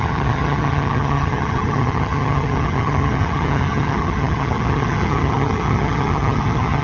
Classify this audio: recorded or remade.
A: remade